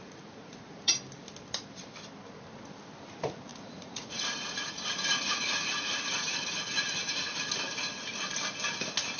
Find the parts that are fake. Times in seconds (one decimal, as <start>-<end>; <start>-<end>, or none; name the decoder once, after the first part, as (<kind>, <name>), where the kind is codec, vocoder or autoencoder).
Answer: 0.0-0.9 (vocoder, Vocos); 3.5-7.5